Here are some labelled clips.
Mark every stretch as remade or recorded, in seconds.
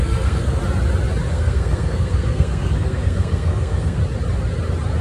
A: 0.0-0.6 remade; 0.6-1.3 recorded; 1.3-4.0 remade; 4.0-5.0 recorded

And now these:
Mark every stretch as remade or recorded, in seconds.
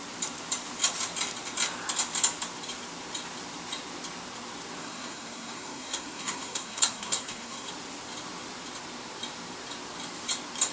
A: 0.0-4.8 recorded; 4.8-7.7 remade; 7.7-10.7 recorded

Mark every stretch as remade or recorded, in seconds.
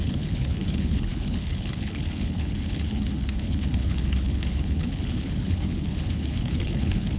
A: 0.0-7.2 remade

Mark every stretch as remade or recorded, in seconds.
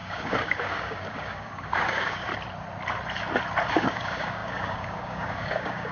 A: 0.0-2.3 remade; 2.3-3.7 recorded; 3.7-5.9 remade